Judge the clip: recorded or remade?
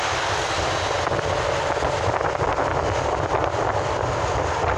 recorded